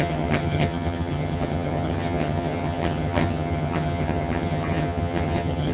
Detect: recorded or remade remade